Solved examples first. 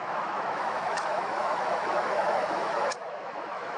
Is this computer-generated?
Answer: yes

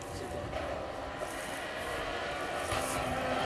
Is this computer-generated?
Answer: no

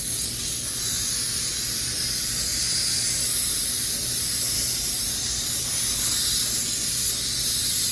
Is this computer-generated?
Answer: no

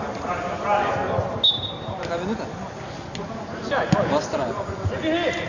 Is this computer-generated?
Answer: no